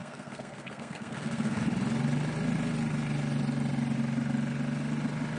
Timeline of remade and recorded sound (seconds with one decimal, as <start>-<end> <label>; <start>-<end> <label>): 0.0-1.6 remade; 1.6-5.4 recorded